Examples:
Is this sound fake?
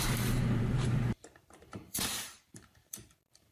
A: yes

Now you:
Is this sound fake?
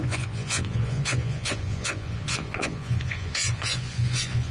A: yes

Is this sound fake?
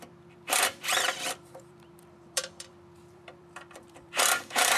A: yes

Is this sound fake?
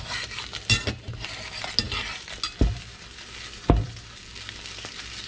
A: no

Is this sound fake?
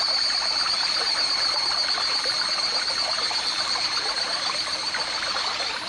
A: no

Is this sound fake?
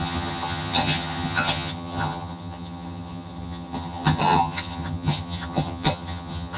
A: yes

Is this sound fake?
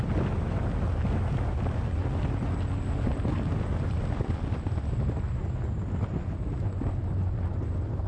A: no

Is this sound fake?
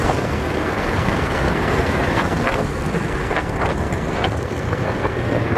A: yes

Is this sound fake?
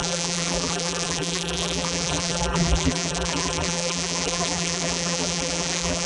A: yes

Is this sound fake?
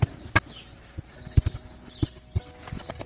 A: no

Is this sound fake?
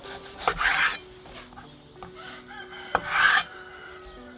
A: no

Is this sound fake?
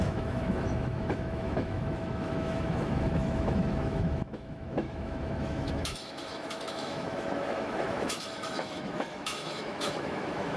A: yes